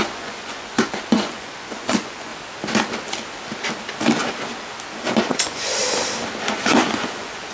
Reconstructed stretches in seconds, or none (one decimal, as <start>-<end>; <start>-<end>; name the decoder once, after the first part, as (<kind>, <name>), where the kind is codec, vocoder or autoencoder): 0.0-2.3 (vocoder, Vocos); 5.2-5.8; 6.5-7.5